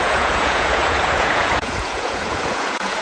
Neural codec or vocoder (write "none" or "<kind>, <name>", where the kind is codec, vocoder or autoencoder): vocoder, Vocos